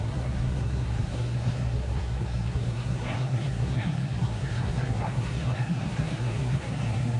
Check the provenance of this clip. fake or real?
fake